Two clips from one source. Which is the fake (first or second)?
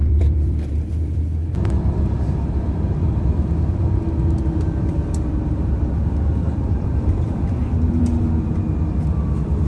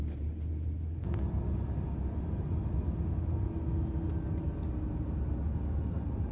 first